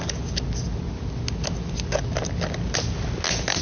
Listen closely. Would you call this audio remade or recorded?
recorded